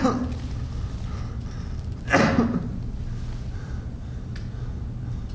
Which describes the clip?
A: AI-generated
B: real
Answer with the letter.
B